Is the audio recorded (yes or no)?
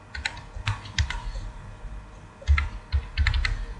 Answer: yes